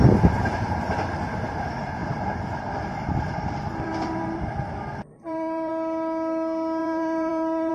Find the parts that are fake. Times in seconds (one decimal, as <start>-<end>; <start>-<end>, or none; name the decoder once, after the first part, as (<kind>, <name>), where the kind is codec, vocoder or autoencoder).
2.0-5.7 (vocoder, BigVGAN v2); 6.8-7.7